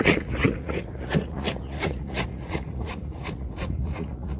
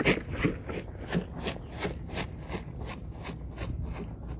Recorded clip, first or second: second